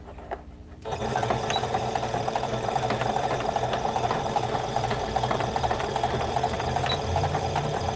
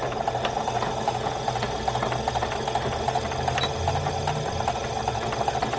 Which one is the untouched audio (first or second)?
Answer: second